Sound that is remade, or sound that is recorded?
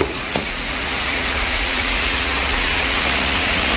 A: remade